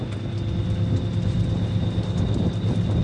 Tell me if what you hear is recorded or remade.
recorded